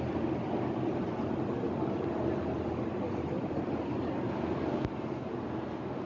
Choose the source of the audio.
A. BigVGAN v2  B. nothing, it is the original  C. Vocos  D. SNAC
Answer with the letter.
B